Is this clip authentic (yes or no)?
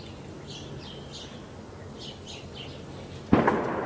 yes